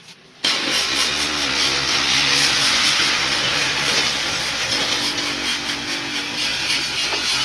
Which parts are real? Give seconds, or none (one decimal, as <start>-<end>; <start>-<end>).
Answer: 0.0-0.8; 4.2-7.4